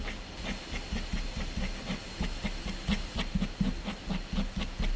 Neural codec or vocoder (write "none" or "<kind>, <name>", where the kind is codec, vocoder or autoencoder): none